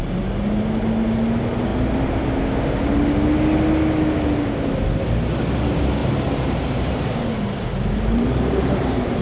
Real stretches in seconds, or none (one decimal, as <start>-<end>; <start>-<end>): 0.0-6.0